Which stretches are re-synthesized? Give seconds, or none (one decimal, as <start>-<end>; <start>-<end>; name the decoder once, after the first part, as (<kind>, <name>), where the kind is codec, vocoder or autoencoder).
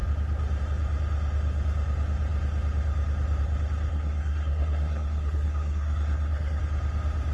3.9-6.6 (codec, SNAC)